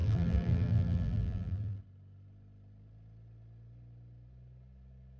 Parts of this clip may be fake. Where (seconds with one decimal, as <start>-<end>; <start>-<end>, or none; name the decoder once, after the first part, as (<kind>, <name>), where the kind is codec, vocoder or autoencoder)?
0.0-1.8 (vocoder, BigVGAN v2)